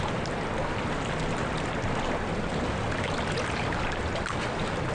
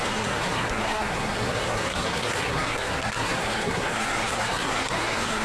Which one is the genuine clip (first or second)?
first